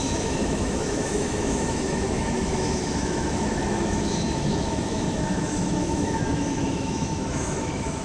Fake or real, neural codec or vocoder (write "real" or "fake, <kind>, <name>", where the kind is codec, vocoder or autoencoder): fake, autoencoder, DAC-VAE